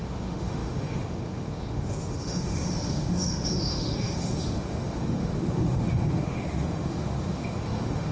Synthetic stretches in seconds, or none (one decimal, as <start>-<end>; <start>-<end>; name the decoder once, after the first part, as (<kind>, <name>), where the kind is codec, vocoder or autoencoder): 0.0-8.1 (autoencoder, DAC-VAE)